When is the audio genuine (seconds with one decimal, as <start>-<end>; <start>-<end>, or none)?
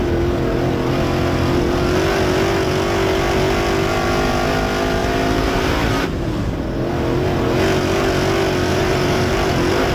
0.0-5.0; 6.4-8.7; 9.3-9.9